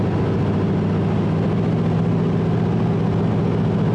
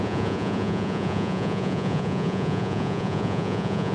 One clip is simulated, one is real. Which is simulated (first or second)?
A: second